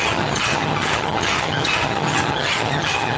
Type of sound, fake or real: fake